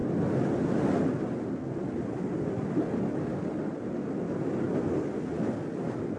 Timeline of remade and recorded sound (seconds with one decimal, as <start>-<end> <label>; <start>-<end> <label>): 0.0-6.2 recorded